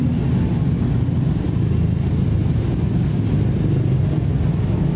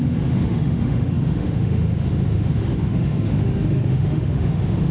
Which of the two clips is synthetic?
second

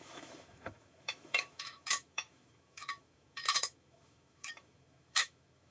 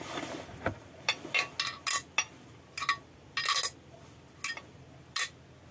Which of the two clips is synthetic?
first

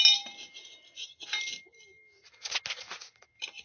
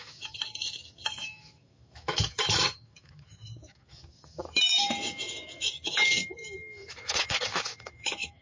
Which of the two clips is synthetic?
second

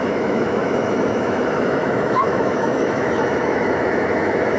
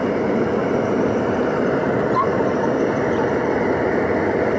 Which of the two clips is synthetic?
first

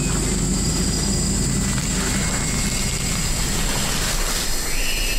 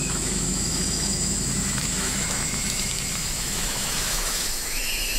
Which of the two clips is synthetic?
second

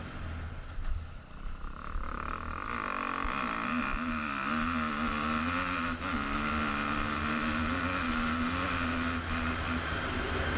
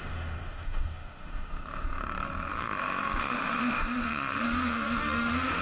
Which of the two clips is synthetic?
second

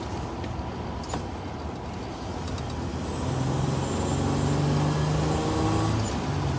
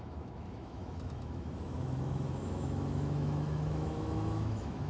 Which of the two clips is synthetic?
second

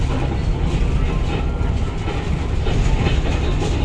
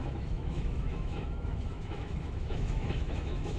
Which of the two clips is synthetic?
second